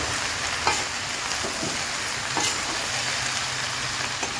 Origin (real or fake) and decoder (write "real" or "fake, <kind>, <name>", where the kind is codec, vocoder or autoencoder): real